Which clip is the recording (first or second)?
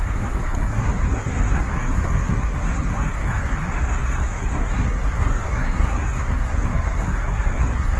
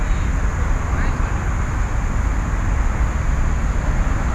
second